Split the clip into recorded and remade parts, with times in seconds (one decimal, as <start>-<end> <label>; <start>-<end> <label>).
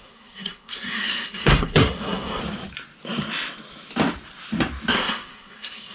0.0-2.4 remade; 2.4-4.9 recorded; 4.9-5.9 remade